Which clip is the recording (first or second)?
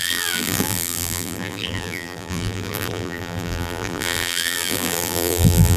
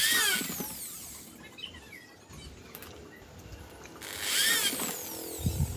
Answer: second